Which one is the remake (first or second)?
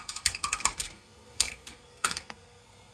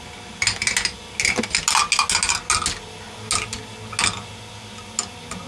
first